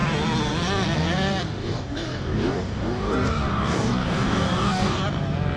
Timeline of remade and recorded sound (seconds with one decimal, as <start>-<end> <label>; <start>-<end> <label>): 0.0-1.6 recorded; 1.6-5.0 remade; 5.0-5.6 recorded